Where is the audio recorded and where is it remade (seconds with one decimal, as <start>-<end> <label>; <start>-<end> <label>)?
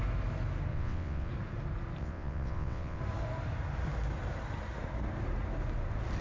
0.0-0.7 recorded; 0.7-1.3 remade; 1.3-2.0 recorded; 2.0-3.0 remade; 3.0-6.2 recorded